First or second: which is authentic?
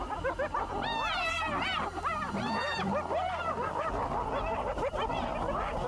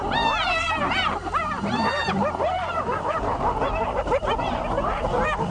first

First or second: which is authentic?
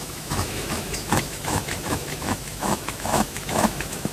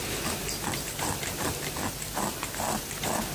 second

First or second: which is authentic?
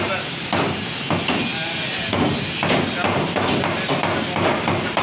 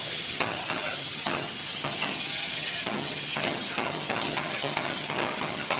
first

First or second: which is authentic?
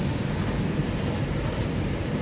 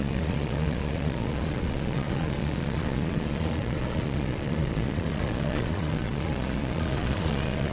first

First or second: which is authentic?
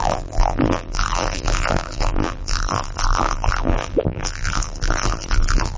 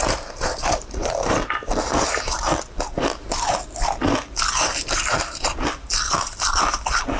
second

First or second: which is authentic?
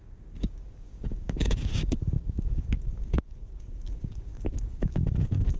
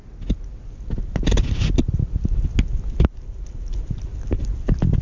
second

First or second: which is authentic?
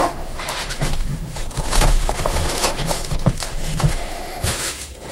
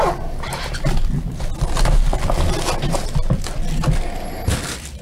second